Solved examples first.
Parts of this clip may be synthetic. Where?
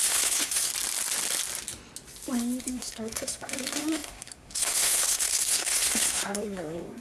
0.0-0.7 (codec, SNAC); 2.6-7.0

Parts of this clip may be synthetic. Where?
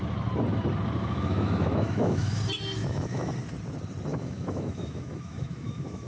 1.0-2.4 (autoencoder, DAC-VAE); 2.8-3.3; 4.1-6.1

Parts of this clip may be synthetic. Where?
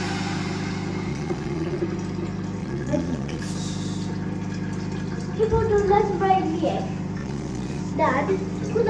1.1-1.8 (vocoder, Vocos); 2.6-3.4; 7.2-7.8